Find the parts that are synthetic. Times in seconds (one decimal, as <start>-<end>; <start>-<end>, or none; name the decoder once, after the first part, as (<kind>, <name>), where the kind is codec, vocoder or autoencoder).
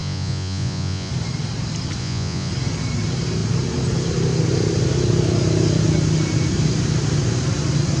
0.0-1.1 (vocoder, Vocos); 2.0-2.5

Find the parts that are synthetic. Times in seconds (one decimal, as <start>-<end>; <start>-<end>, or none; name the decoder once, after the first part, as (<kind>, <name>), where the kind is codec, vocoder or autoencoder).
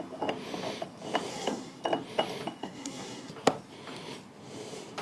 1.3-1.8 (codec, SNAC); 2.6-3.3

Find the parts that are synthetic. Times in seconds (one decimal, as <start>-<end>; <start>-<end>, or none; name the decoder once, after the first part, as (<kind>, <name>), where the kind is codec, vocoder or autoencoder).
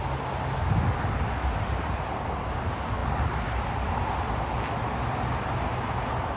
none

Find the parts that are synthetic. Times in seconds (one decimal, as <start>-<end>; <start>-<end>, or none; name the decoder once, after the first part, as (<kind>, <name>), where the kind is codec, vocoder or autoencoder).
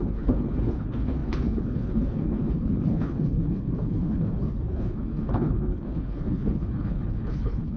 0.0-7.8 (codec, HILCodec)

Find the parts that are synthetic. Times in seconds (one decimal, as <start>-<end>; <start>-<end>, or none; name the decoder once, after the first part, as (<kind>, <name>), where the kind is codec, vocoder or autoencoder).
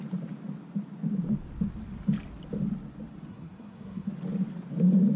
3.3-4.1 (codec, SNAC)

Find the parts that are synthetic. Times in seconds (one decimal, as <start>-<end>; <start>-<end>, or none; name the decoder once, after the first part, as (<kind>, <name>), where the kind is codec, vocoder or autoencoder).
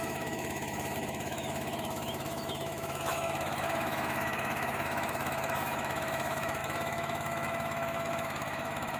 0.0-9.0 (autoencoder, DAC-VAE)